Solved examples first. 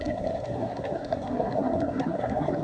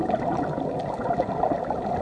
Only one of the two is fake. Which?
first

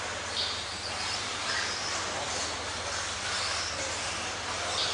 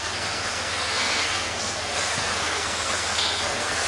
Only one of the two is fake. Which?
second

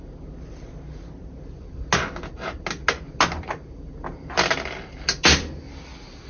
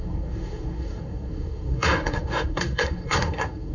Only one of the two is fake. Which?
second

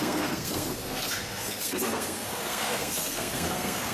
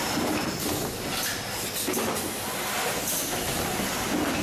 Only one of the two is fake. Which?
first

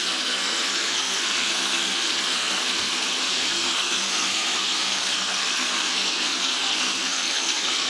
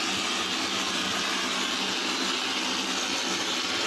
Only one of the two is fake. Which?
first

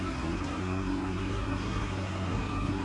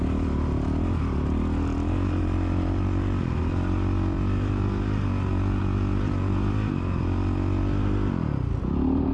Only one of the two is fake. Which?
first